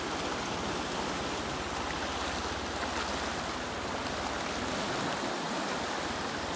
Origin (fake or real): real